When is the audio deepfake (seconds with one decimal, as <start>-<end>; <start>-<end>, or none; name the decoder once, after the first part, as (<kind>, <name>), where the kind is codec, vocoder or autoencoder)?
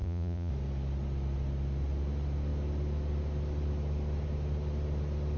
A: 0.0-0.5 (vocoder, Vocos)